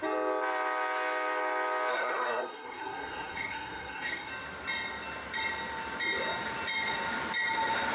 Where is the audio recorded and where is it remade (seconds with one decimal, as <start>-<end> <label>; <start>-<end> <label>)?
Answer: 0.0-1.9 recorded; 1.9-4.3 remade; 4.3-7.9 recorded